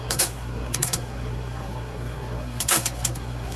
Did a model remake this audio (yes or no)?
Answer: yes